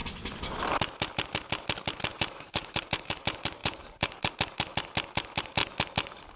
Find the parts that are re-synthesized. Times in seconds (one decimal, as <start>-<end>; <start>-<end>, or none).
2.1-3.2; 3.6-4.3